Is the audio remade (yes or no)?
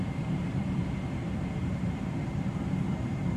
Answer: yes